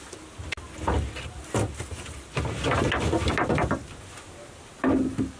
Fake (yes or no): no